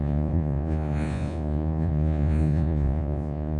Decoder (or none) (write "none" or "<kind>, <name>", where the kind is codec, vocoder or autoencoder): vocoder, Vocos